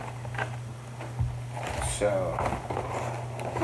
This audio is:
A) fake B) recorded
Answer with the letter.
B